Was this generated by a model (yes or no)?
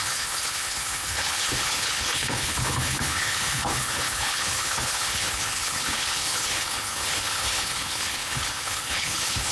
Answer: yes